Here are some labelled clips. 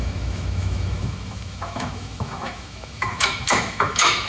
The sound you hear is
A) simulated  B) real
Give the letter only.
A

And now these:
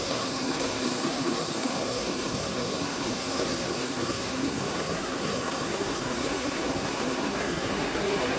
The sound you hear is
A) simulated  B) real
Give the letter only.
A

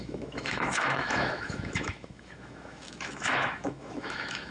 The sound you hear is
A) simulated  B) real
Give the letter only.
A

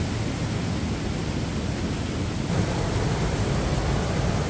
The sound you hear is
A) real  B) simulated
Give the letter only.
A